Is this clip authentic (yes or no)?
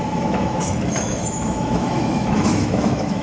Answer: no